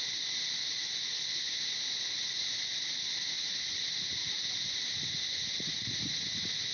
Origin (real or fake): real